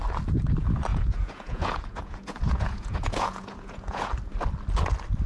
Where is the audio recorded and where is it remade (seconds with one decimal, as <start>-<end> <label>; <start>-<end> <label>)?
0.0-0.9 recorded; 0.9-4.1 remade; 4.1-5.3 recorded